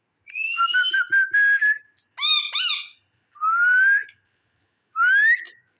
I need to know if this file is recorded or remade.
recorded